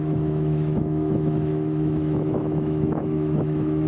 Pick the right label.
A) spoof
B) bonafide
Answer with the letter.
A